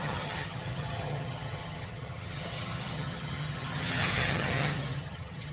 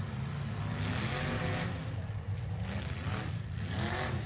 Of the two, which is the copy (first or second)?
first